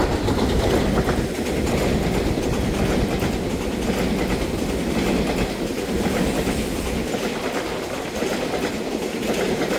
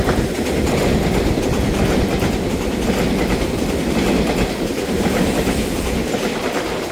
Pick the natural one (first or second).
first